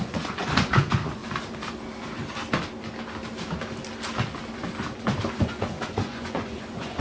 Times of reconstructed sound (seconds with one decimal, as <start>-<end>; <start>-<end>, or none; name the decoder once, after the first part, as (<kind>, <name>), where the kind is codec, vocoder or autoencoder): 0.0-1.2 (vocoder, Vocos); 5.4-7.0